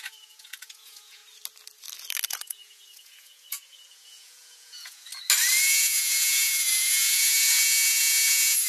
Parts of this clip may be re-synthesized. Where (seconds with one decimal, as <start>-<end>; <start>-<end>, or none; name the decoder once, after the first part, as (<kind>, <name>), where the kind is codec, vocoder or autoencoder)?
0.0-1.2 (vocoder, Vocos); 2.3-5.1; 5.6-8.7